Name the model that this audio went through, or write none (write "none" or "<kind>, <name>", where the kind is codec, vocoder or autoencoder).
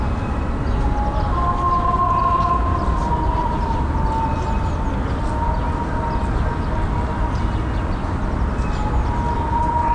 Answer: none